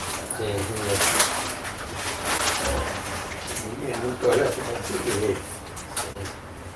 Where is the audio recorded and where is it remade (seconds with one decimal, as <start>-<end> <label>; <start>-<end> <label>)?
0.0-6.8 recorded